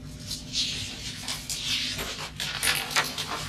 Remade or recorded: recorded